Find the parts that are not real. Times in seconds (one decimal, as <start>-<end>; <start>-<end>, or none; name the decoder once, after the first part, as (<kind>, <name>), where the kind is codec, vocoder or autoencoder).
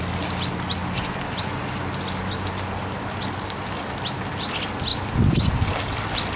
none